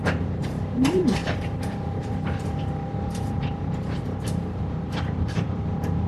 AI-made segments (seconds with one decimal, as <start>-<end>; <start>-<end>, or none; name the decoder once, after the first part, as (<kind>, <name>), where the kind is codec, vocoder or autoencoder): 0.0-6.1 (vocoder, BigVGAN v2)